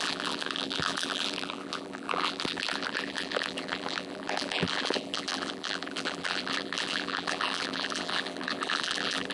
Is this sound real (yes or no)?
no